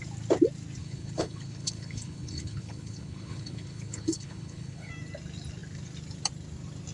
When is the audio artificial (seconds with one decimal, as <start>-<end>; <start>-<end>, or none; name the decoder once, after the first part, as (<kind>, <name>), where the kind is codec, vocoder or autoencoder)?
0.8-4.9 (codec, HILCodec)